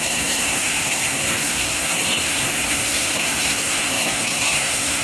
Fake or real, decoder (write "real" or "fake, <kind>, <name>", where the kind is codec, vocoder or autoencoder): fake, codec, SNAC